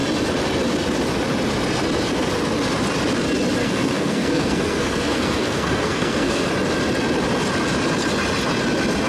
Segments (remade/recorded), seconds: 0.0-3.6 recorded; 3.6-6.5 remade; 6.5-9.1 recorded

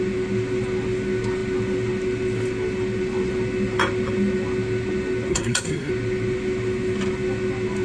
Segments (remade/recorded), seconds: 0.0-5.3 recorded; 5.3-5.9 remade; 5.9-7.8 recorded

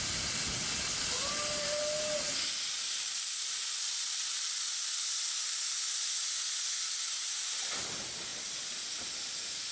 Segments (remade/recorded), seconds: 0.0-9.7 recorded